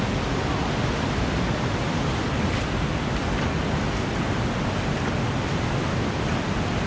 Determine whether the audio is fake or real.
real